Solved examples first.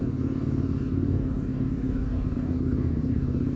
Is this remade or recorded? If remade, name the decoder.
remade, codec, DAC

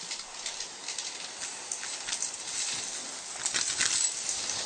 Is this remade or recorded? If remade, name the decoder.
recorded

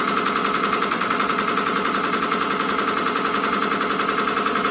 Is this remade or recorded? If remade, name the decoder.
recorded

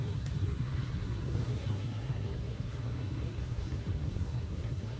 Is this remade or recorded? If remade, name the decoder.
remade, codec, SNAC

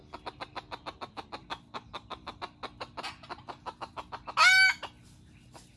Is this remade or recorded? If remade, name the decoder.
recorded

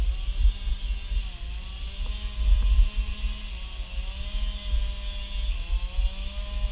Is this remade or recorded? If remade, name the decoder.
recorded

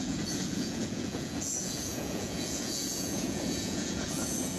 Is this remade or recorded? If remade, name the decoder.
remade, vocoder, Vocos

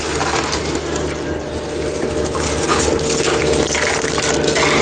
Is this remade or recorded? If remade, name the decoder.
recorded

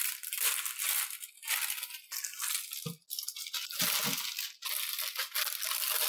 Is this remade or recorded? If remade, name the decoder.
recorded